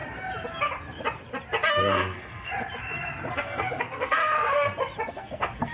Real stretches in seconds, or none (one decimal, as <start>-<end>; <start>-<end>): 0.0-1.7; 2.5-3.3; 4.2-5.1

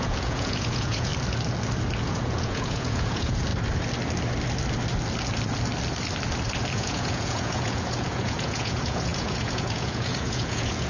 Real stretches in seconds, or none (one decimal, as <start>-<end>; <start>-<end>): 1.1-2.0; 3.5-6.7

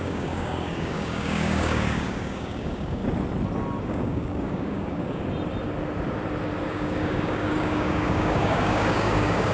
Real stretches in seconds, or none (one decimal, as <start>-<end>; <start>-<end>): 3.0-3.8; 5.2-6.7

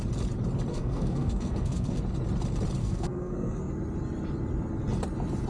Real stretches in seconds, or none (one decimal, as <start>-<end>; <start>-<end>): 0.0-0.7; 2.0-2.8; 3.7-5.5

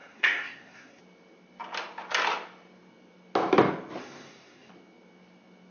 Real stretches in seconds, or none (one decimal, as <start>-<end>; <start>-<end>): 1.0-4.0; 4.7-5.7

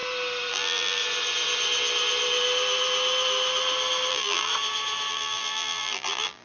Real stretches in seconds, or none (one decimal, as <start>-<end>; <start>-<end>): 0.0-0.5; 1.0-4.1; 4.5-5.1

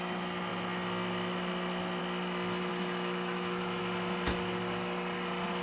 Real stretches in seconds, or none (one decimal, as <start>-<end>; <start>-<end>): 0.0-2.7; 3.8-5.6